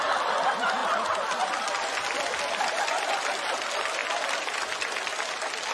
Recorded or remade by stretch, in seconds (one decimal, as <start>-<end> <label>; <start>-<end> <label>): 0.0-0.8 recorded; 0.8-2.4 remade; 2.4-5.7 recorded